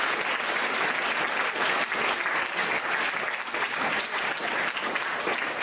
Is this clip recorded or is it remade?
recorded